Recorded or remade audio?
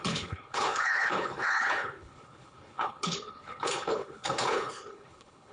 remade